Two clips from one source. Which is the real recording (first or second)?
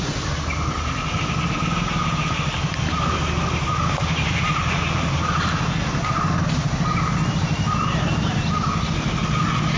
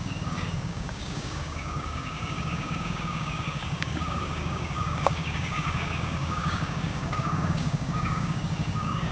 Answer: first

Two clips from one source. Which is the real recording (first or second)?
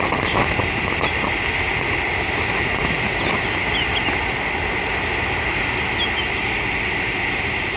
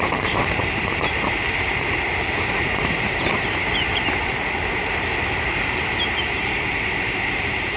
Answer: first